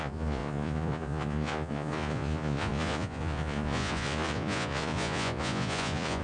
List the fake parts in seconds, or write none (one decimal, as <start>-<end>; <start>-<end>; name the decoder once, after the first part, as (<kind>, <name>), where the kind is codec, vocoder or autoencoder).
0.0-6.2 (vocoder, Vocos)